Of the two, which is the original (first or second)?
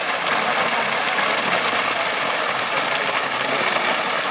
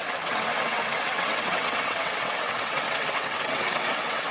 first